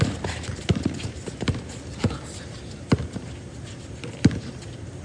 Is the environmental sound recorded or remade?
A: remade